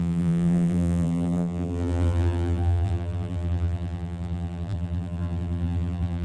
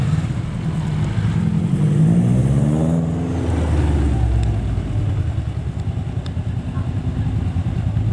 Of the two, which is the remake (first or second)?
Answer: first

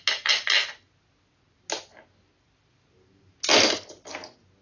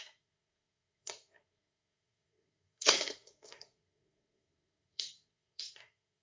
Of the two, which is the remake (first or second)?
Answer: second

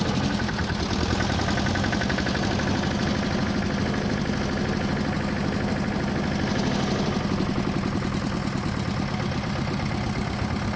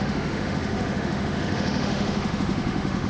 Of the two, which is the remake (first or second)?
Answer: second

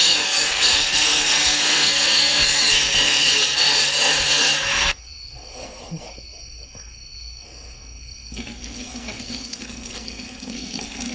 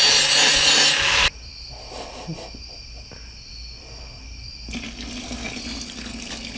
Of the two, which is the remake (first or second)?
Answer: first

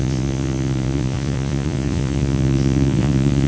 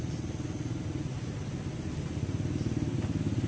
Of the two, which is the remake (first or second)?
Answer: first